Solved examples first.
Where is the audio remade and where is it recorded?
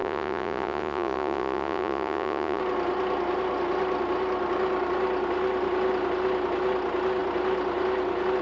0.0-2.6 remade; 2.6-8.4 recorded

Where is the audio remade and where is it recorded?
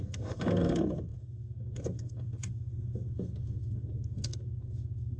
0.0-5.2 remade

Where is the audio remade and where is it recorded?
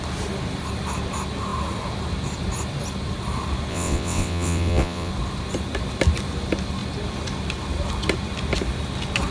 0.0-3.7 recorded; 3.7-5.1 remade; 5.1-9.3 recorded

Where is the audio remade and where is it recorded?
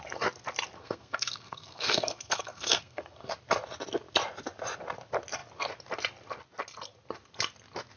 0.0-0.8 recorded; 0.8-3.3 remade; 3.3-8.0 recorded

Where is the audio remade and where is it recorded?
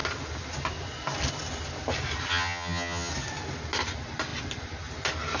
0.0-2.3 recorded; 2.3-3.1 remade; 3.1-5.4 recorded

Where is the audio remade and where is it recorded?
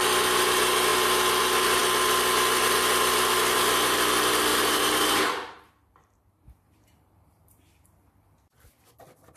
0.0-4.5 recorded; 4.5-8.1 remade; 8.1-9.4 recorded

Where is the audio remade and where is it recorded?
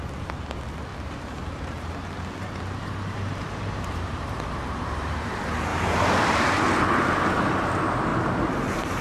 0.0-0.9 recorded; 0.9-5.2 remade; 5.2-5.7 recorded; 5.7-6.5 remade; 6.5-8.1 recorded; 8.1-9.0 remade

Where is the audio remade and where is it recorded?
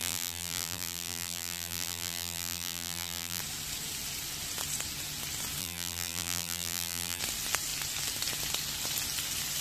0.0-3.4 remade; 3.4-5.6 recorded; 5.6-7.2 remade; 7.2-9.6 recorded